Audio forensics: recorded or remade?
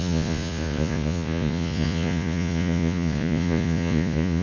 remade